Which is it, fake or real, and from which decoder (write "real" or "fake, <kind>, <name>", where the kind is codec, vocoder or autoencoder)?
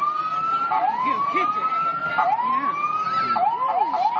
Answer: real